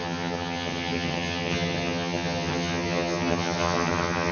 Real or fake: fake